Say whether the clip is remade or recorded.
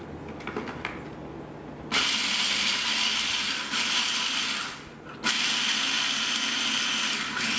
recorded